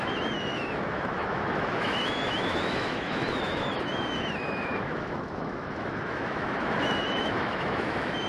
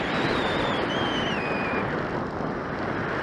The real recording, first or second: second